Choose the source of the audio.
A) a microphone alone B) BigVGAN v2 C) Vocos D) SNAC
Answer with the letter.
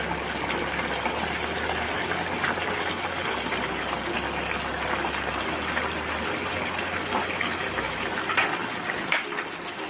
A